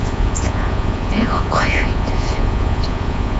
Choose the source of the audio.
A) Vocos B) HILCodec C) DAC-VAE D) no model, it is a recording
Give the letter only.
A